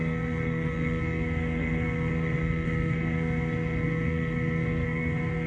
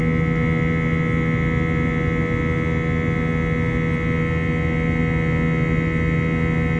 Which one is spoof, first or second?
first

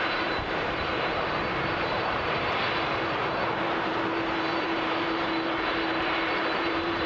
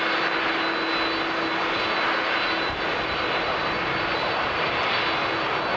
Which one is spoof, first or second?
first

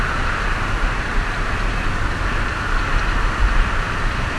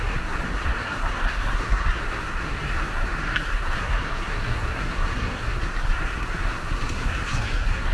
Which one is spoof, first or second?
second